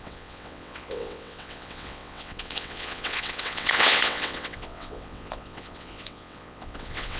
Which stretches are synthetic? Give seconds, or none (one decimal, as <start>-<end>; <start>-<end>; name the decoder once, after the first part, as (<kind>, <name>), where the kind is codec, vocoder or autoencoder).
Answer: 0.0-7.2 (vocoder, WaveNeXt)